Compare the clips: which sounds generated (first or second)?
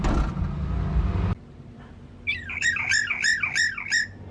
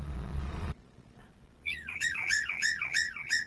second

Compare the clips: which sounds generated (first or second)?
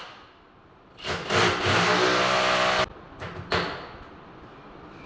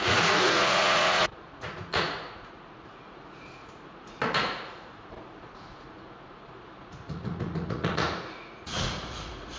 second